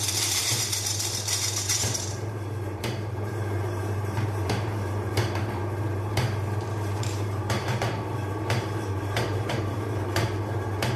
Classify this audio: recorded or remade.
remade